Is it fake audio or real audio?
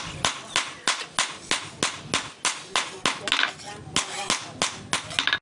real